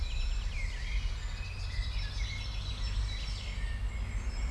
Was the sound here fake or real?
real